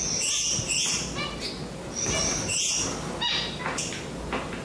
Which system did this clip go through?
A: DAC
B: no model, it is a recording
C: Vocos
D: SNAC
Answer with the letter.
B